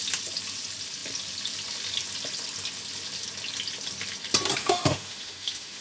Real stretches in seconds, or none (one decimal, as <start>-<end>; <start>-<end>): 0.0-4.6